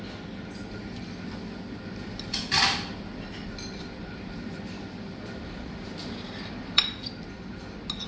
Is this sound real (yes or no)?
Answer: yes